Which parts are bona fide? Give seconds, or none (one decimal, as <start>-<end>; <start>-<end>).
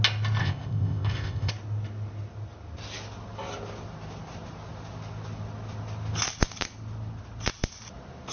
0.0-0.4; 1.5-8.3